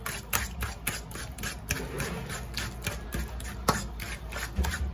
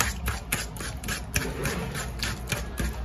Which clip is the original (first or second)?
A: first